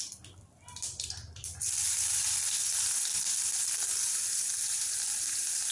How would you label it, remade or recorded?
remade